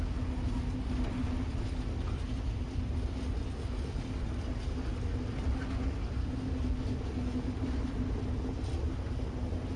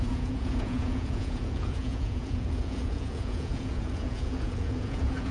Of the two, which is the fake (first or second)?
second